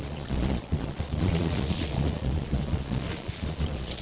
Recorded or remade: remade